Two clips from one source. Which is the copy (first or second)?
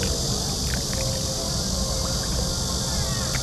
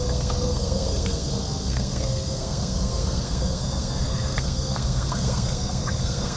second